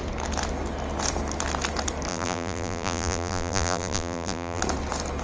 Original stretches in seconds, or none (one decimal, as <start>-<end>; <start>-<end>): 0.0-2.1; 4.6-5.2